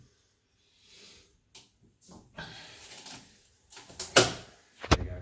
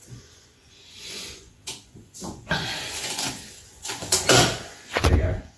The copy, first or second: second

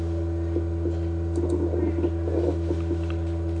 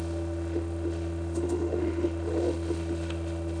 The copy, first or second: second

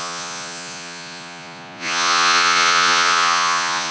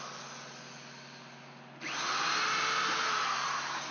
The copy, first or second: first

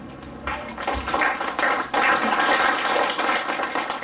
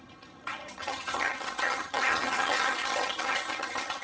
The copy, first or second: second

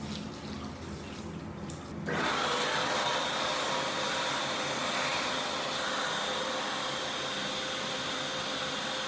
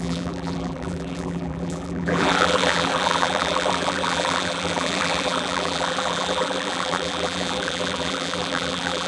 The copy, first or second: second